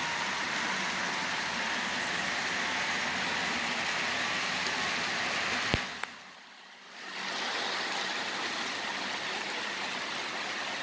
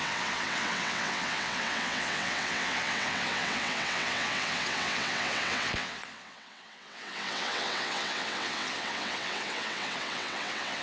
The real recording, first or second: first